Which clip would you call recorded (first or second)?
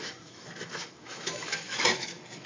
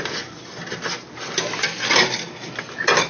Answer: second